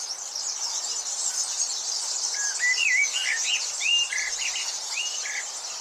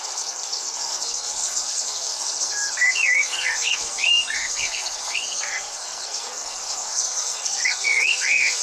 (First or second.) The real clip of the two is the first